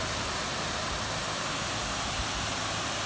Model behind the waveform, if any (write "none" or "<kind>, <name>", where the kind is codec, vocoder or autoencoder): none